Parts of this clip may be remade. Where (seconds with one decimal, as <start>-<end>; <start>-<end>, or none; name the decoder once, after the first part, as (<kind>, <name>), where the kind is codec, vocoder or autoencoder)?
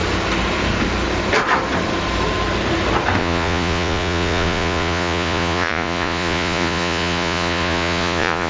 3.2-8.5 (vocoder, Vocos)